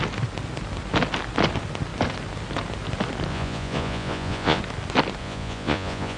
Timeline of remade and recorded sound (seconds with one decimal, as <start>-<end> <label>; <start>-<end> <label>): 0.0-3.3 recorded; 3.3-4.6 remade; 4.6-5.2 recorded; 5.2-6.2 remade